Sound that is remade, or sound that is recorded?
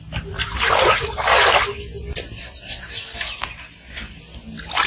recorded